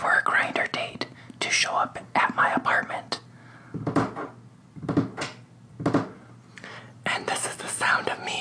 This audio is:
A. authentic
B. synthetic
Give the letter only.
A